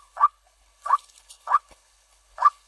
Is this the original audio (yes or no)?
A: no